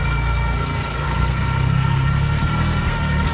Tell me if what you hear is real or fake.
fake